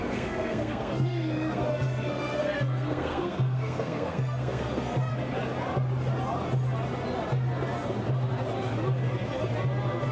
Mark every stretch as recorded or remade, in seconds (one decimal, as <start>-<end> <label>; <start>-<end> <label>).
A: 0.0-5.1 remade; 5.1-10.1 recorded